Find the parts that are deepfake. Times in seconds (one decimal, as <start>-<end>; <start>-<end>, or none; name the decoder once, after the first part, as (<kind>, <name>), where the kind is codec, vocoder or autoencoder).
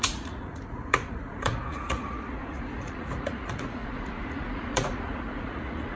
0.0-6.0 (vocoder, Vocos)